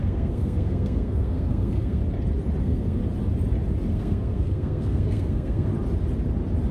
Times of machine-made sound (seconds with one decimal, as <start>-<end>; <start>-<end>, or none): 0.0-2.0; 2.6-3.0; 3.9-5.7